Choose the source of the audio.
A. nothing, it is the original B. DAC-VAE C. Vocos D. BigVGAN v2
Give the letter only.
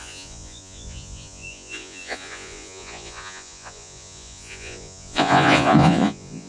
C